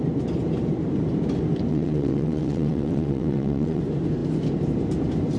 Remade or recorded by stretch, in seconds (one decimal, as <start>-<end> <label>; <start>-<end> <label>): 0.0-1.7 recorded; 1.7-3.8 remade; 3.8-5.4 recorded